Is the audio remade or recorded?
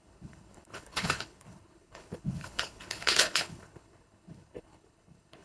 remade